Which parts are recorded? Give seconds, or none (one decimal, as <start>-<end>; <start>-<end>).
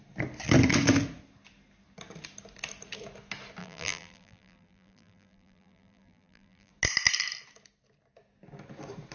0.0-3.6; 6.7-9.1